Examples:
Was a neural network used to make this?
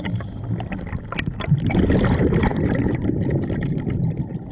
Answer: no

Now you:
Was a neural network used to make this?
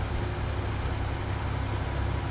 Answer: no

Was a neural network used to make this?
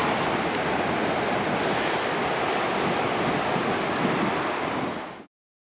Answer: no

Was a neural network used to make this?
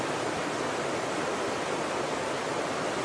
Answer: no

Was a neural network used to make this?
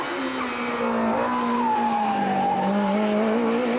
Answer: no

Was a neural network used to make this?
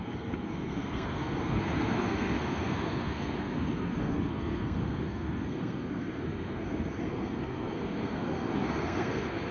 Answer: yes